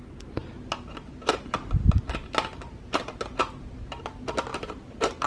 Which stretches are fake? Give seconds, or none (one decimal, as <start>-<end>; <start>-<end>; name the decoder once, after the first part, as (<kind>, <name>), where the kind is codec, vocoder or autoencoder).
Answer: 4.5-5.3 (vocoder, BigVGAN v2)